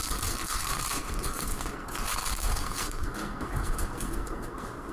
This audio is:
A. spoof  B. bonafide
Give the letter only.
A